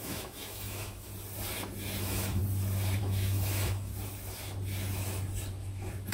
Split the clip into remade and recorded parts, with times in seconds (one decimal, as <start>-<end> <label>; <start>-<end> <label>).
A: 0.0-1.1 remade; 1.1-2.0 recorded; 2.0-2.4 remade; 2.4-3.0 recorded; 3.0-3.9 remade; 3.9-6.1 recorded